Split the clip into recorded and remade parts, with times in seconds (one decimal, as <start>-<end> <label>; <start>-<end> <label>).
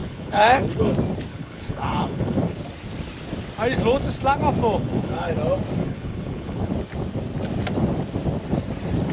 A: 0.0-0.9 remade; 0.9-1.3 recorded; 1.3-2.4 remade; 2.4-4.8 recorded; 4.8-5.3 remade; 5.3-5.8 recorded; 5.8-6.7 remade; 6.7-9.1 recorded